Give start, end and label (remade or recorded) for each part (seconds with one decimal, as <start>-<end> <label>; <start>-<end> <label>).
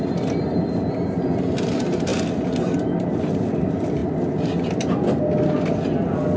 0.0-6.4 recorded